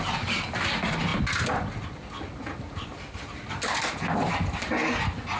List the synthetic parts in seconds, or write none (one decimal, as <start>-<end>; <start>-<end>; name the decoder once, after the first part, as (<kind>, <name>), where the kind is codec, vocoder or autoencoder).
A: none